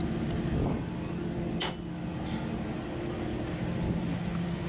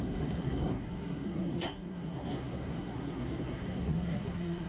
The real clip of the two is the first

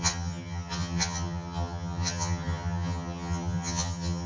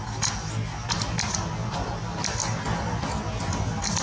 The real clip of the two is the second